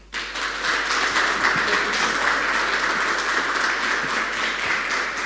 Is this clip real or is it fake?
real